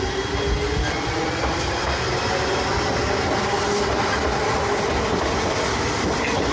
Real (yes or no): yes